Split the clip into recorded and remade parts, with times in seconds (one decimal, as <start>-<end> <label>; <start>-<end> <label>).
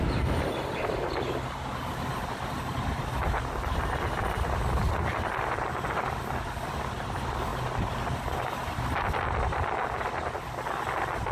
0.0-11.3 recorded